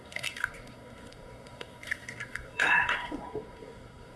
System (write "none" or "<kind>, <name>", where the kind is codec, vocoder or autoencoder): codec, SNAC